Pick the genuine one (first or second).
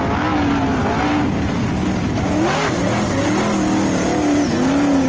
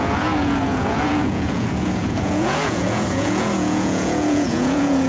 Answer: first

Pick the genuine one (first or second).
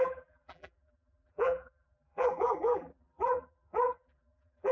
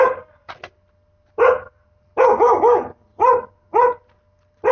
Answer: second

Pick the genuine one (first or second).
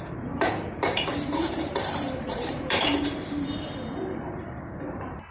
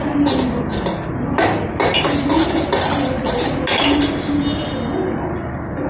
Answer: second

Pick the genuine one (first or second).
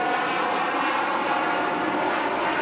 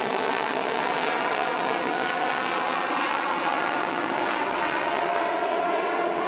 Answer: first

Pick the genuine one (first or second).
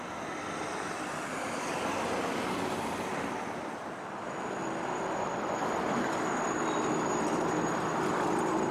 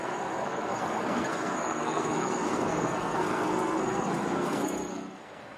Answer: first